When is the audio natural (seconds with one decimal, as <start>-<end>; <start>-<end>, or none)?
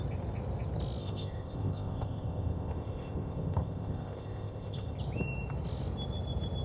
0.0-1.0; 5.0-6.6